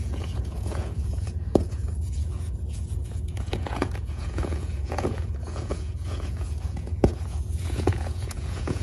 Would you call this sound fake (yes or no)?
yes